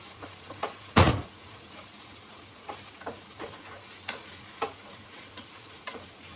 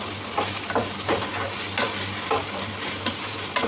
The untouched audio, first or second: second